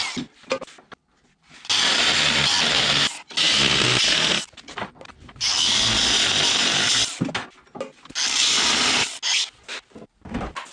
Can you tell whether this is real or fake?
real